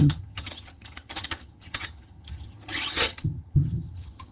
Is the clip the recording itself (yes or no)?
no